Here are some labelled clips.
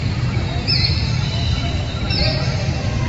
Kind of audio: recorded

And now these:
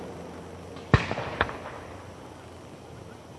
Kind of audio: recorded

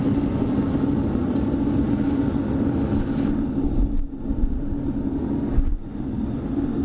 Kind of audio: recorded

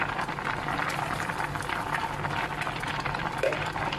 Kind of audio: recorded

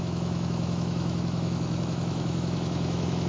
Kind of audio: remade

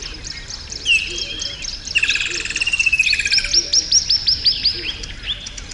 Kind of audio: recorded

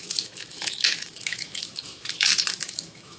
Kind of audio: remade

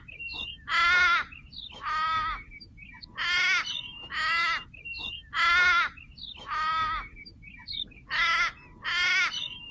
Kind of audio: recorded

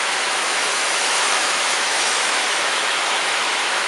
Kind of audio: remade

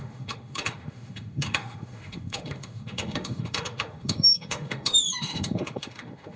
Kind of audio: remade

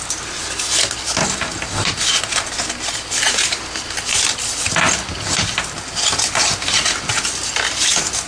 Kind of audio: recorded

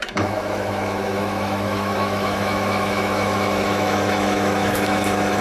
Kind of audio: remade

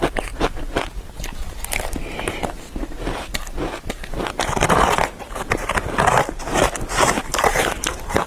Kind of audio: recorded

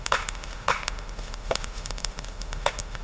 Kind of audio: remade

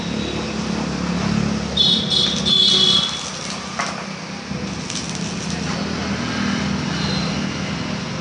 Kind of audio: recorded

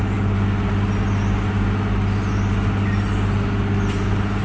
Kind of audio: recorded